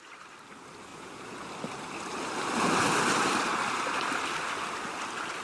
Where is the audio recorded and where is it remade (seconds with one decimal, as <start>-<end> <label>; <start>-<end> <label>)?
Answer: 0.0-0.9 recorded; 0.9-1.5 remade; 1.5-5.4 recorded